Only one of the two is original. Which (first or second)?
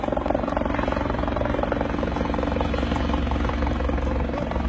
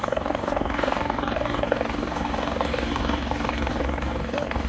first